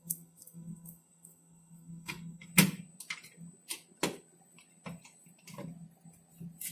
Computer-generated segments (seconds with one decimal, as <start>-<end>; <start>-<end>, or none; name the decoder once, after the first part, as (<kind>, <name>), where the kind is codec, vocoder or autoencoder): 0.0-2.5 (codec, SNAC)